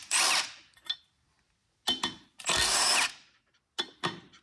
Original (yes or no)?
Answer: yes